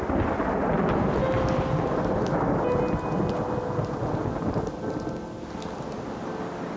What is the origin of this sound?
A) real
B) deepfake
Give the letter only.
A